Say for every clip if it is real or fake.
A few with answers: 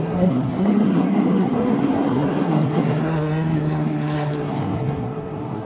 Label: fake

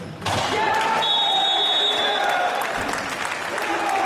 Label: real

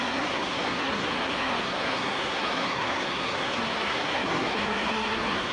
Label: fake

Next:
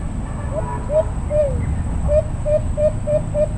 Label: real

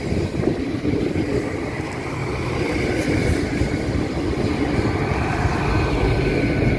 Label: real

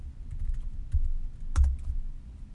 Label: real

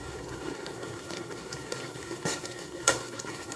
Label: fake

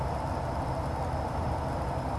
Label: real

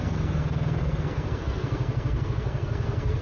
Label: fake